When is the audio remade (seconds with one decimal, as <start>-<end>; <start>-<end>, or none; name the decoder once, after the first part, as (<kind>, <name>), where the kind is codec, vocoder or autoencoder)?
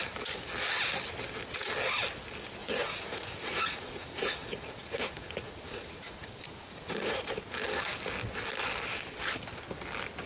2.6-7.3 (vocoder, Vocos)